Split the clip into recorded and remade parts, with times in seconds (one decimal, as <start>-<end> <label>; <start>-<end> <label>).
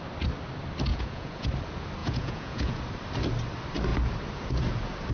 0.0-0.9 recorded; 0.9-1.5 remade; 1.5-2.0 recorded; 2.0-2.8 remade; 2.8-5.1 recorded